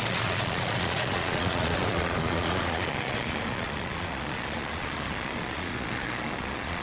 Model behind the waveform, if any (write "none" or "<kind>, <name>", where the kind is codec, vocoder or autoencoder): vocoder, Vocos